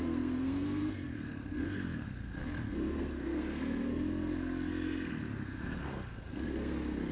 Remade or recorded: remade